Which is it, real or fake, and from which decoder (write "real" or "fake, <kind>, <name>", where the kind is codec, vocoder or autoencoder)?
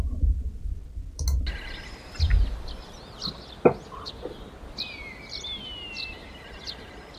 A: real